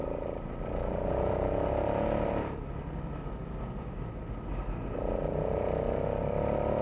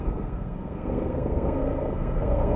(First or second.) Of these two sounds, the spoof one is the second